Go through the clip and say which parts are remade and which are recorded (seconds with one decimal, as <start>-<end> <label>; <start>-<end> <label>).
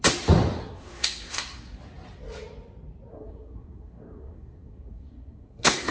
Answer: 0.0-0.6 recorded; 0.6-1.8 remade; 1.8-3.1 recorded; 3.1-5.9 remade